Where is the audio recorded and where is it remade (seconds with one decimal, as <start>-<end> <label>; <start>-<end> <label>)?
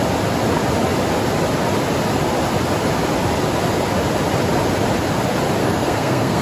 0.0-5.6 recorded; 5.6-6.4 remade